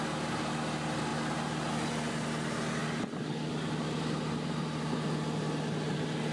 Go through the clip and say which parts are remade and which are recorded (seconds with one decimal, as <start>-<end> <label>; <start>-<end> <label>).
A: 0.0-6.3 recorded